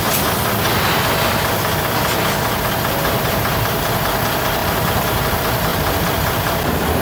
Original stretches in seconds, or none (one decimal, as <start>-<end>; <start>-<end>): 0.0-4.6; 5.2-5.7; 6.5-7.0